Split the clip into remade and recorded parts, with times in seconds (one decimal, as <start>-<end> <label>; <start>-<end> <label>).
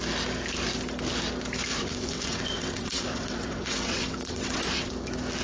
0.0-1.7 recorded; 1.7-4.9 remade; 4.9-5.4 recorded